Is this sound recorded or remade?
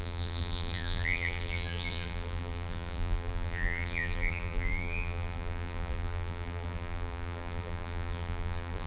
remade